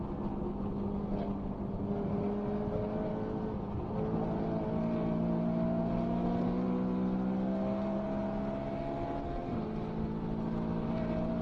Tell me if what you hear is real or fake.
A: real